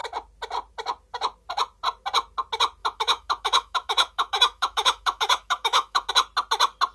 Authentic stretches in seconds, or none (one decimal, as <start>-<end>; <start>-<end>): 0.0-2.8; 6.1-6.9